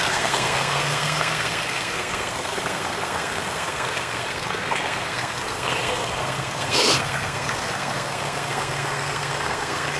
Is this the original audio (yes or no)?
no